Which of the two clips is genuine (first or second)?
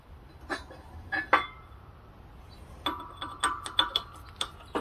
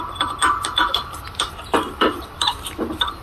first